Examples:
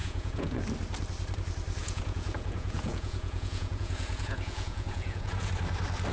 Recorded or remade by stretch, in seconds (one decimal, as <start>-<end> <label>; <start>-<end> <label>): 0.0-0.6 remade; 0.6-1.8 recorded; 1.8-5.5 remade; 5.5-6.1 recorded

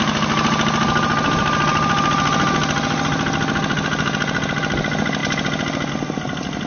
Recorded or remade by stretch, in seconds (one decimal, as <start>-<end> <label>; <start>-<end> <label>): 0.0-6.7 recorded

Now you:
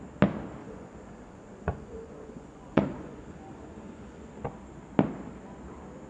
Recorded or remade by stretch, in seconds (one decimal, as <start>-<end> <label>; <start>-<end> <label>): 0.0-0.6 recorded; 0.6-4.3 remade; 4.3-6.1 recorded

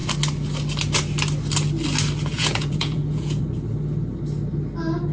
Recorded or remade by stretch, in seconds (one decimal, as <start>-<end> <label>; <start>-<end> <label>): 0.0-2.3 recorded; 2.3-3.4 remade; 3.4-5.1 recorded

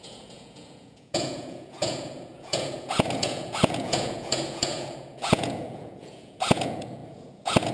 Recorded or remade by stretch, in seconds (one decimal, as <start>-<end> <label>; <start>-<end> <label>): 0.0-7.7 remade

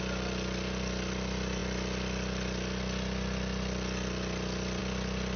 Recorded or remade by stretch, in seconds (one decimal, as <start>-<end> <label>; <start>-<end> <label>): 0.0-5.4 recorded